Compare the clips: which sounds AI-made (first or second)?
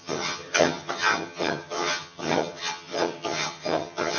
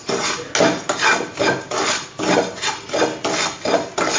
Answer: first